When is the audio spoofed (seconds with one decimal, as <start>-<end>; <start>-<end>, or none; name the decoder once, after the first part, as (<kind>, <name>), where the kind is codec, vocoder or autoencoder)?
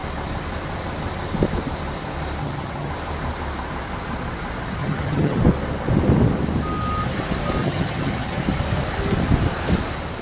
2.4-2.9 (vocoder, HiFi-GAN); 4.8-5.4; 7.6-8.4